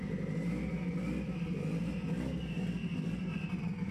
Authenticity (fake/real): real